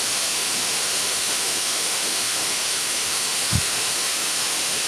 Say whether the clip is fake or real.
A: fake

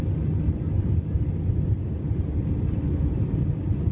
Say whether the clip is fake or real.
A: real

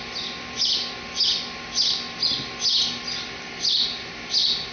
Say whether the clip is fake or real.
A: real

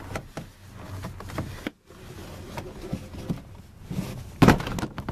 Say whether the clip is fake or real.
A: real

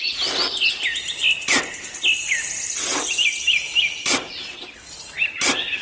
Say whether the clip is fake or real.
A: real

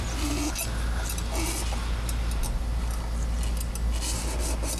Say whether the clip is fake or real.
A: real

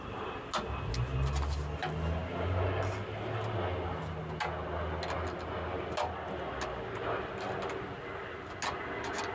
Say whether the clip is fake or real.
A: real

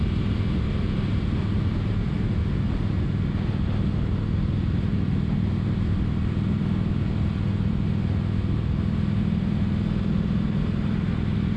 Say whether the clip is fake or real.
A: real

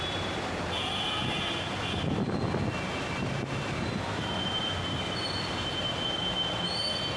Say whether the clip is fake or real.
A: real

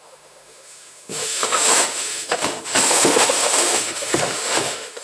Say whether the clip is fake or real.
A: fake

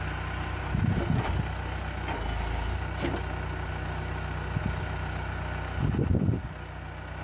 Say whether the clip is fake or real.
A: real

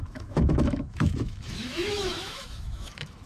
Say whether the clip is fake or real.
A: fake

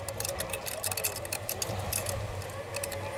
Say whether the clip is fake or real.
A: real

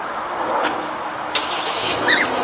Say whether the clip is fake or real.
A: fake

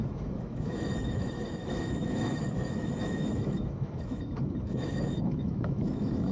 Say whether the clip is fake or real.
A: fake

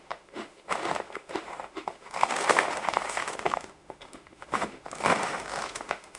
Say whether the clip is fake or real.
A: fake